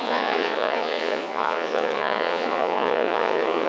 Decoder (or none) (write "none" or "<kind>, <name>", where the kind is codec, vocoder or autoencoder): vocoder, Vocos